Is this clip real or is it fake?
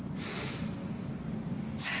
real